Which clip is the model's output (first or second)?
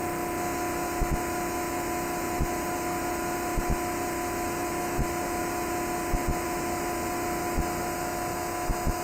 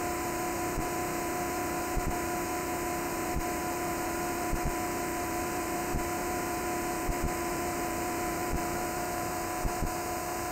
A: second